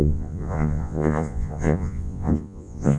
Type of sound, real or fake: fake